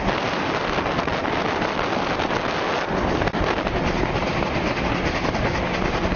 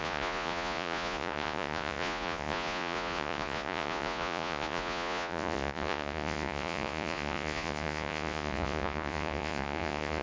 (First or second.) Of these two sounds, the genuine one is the first